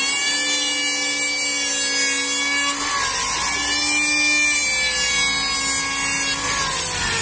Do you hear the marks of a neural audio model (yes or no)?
no